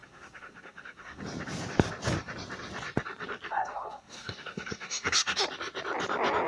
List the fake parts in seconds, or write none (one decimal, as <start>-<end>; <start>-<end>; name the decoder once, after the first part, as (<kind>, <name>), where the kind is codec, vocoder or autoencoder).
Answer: 0.0-1.2 (codec, SNAC); 3.5-5.4